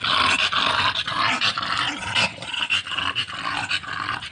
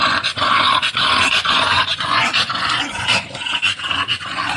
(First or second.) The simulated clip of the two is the second